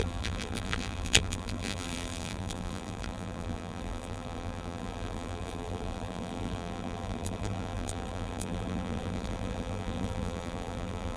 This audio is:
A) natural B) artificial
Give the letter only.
B